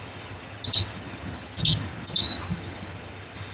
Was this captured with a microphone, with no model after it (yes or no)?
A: no